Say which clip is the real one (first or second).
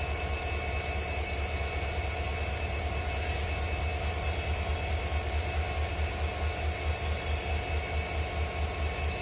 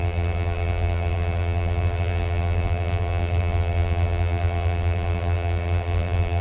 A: first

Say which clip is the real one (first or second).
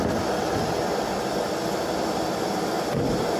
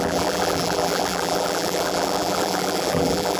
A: first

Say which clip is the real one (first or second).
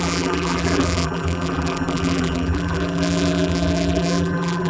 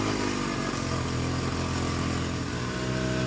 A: second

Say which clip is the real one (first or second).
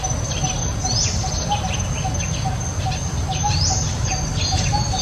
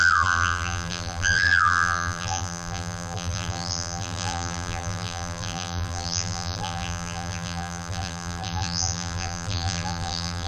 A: first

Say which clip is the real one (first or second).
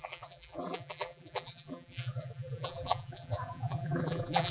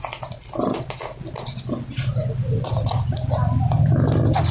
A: second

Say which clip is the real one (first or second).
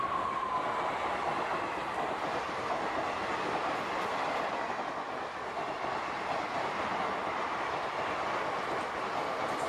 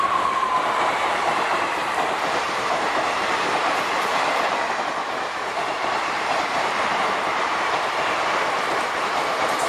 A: first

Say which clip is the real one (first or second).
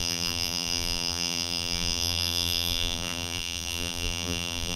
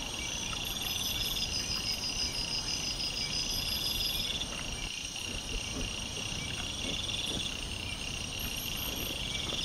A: second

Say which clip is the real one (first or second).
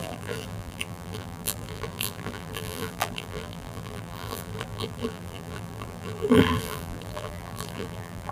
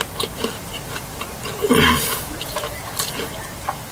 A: second